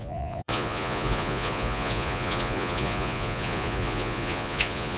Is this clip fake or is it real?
fake